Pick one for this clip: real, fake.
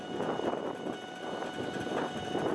real